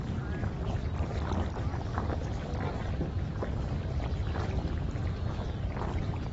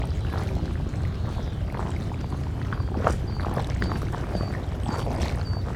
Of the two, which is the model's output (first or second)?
first